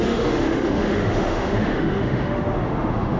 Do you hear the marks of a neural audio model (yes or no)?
yes